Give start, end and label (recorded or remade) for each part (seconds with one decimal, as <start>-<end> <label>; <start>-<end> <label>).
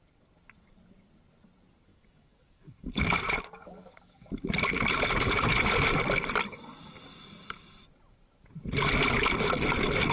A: 0.0-1.9 recorded; 1.9-4.3 remade; 4.3-10.1 recorded